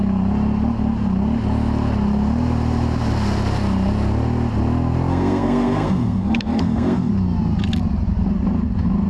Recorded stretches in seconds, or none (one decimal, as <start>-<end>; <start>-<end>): 0.0-5.1; 7.1-9.1